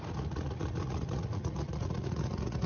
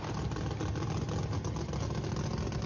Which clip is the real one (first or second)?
second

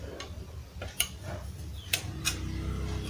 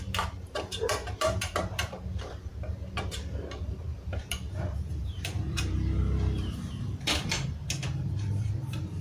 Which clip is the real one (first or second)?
first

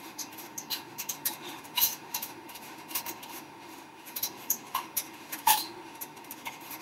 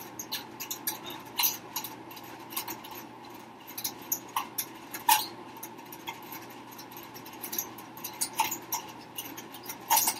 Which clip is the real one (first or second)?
second